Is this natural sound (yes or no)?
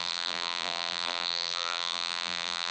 no